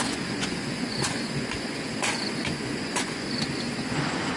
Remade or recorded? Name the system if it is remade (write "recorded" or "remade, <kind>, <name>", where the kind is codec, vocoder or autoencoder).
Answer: remade, vocoder, Vocos